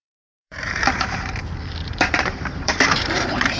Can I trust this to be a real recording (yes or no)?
no